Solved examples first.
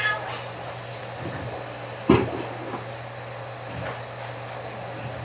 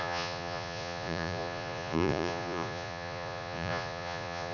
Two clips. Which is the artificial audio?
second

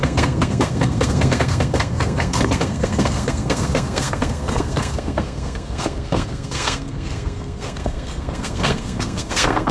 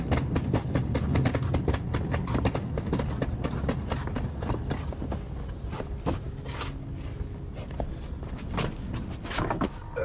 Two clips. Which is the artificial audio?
first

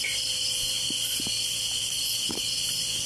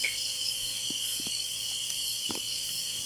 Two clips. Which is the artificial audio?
second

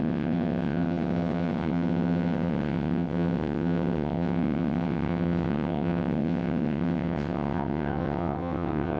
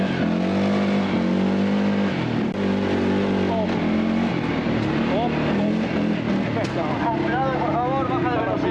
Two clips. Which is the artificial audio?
first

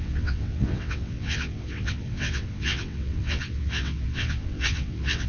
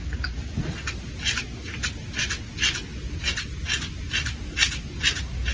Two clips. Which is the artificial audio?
first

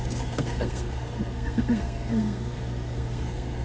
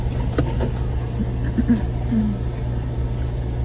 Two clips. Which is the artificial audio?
first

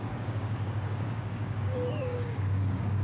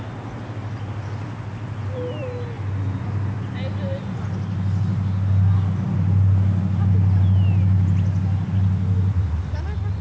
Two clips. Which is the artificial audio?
first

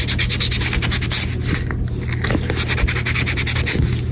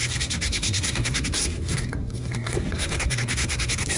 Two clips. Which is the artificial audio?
second